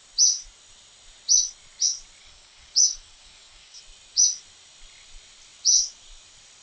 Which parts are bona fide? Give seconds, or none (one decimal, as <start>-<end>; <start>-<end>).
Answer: 0.0-2.2; 3.8-6.6